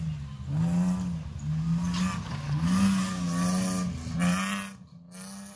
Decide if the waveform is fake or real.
real